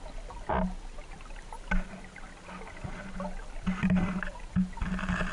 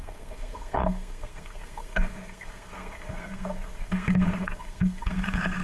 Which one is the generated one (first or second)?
second